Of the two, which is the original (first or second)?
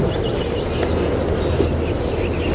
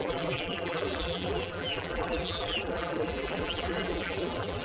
first